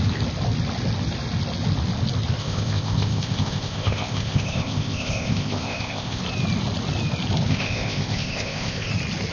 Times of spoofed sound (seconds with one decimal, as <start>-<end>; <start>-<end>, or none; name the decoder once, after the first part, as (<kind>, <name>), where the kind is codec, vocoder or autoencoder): 2.4-6.2 (codec, ZipCodec); 7.5-8.9